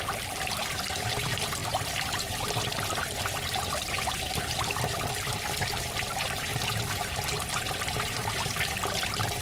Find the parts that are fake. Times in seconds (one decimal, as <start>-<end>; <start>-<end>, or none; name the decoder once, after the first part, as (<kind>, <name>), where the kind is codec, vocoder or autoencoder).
0.0-6.5 (vocoder, BigVGAN v2); 8.5-9.4